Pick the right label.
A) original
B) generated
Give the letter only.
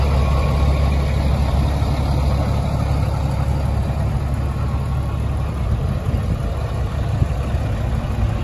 A